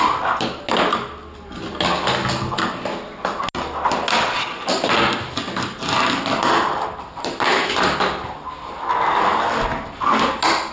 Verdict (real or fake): real